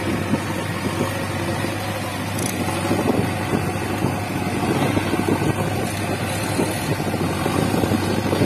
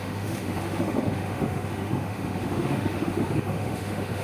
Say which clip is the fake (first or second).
second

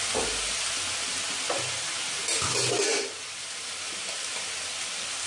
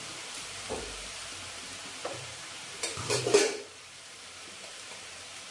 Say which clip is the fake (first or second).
second